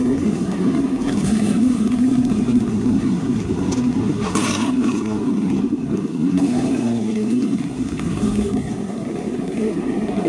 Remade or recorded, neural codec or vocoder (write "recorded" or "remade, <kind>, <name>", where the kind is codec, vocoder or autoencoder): remade, codec, SNAC